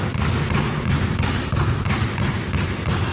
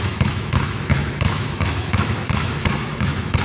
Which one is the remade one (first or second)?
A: second